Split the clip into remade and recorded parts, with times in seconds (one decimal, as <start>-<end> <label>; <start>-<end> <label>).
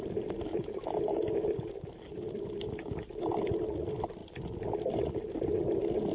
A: 0.0-6.1 recorded